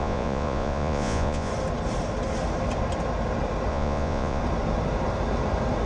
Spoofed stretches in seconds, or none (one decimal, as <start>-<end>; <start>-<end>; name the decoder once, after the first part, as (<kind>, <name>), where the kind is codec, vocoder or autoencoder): 0.0-1.5 (vocoder, Vocos); 3.7-4.4